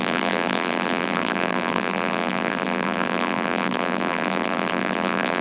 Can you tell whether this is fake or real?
fake